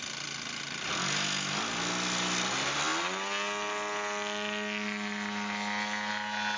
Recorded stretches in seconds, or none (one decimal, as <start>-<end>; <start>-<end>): 0.0-6.6